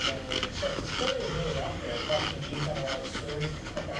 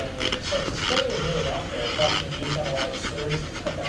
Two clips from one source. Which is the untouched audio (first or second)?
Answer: second